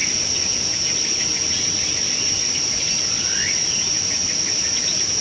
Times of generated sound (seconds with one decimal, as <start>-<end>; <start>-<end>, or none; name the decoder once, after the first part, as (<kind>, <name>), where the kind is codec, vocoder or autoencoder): 3.1-4.2 (vocoder, BigVGAN v2)